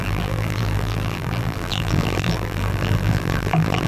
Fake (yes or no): yes